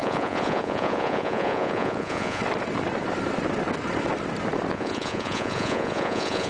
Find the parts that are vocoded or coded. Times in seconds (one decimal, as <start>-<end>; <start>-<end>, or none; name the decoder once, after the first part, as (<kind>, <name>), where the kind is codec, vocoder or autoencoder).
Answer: 0.0-2.4 (vocoder, Vocos); 4.7-6.5